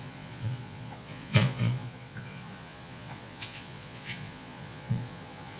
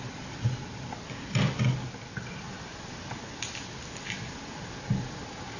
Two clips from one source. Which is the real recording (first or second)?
second